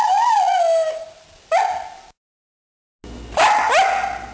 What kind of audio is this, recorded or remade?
recorded